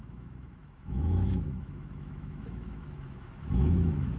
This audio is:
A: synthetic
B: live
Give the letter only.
A